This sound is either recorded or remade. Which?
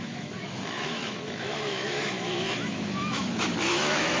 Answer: remade